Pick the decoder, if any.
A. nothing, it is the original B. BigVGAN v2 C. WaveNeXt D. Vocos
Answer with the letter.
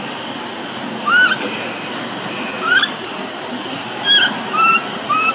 A